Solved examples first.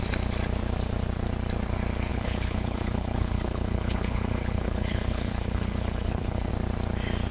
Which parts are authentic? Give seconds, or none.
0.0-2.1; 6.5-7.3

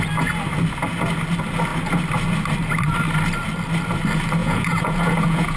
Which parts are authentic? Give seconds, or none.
0.0-4.4

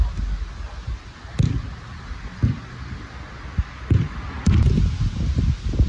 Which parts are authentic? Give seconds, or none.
0.0-5.9

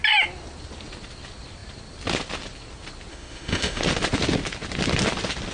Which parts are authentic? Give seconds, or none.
0.0-3.1; 3.8-5.5

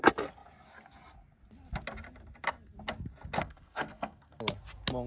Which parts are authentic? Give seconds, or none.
0.0-3.4; 4.4-5.1

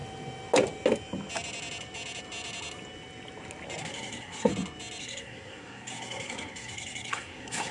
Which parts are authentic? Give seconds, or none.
0.0-3.8; 4.5-5.0

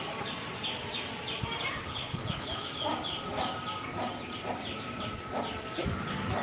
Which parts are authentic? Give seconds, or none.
0.0-1.8; 2.5-6.4